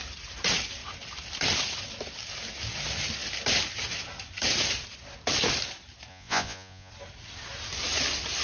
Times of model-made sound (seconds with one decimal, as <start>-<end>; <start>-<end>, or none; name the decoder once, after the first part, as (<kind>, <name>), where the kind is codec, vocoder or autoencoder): 6.1-6.9 (vocoder, Vocos)